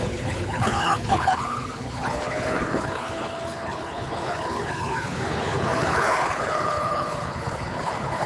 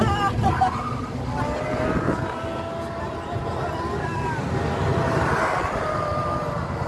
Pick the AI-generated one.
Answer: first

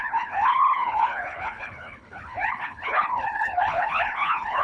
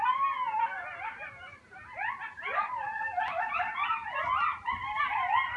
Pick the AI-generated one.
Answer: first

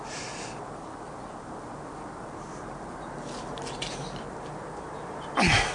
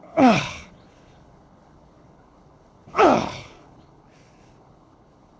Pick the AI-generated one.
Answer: second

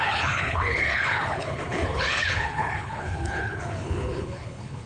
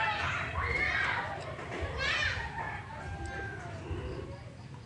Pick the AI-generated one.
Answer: first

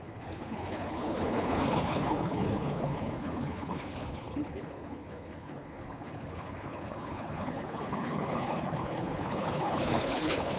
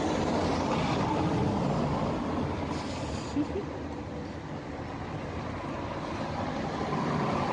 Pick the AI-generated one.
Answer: first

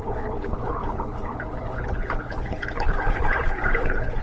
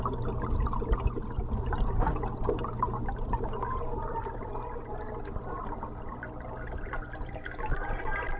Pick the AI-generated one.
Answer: first